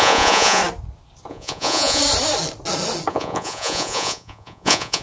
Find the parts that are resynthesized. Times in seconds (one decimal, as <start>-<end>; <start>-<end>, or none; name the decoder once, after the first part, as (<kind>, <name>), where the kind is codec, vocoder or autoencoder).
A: 0.0-0.6 (vocoder, Vocos); 1.3-2.0; 3.1-5.0

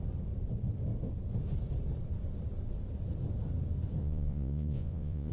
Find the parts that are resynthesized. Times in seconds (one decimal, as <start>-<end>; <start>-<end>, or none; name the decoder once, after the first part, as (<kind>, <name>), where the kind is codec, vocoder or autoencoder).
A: 4.0-5.3 (vocoder, Vocos)